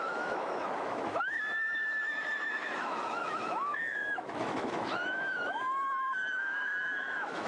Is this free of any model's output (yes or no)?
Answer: no